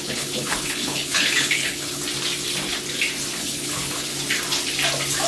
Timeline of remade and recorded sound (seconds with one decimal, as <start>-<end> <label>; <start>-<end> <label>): 0.0-2.0 remade; 2.0-3.3 recorded; 3.3-4.1 remade; 4.1-5.3 recorded